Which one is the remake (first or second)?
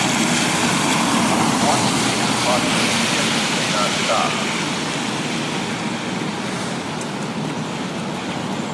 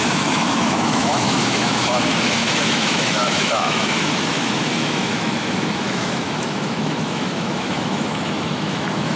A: second